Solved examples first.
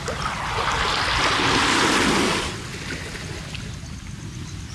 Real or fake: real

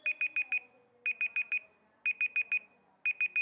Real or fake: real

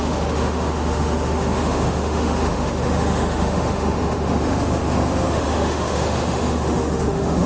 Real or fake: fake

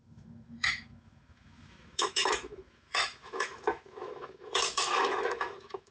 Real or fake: fake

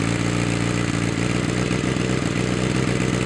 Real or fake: real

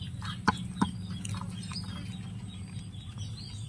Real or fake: real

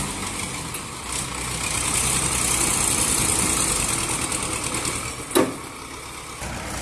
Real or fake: real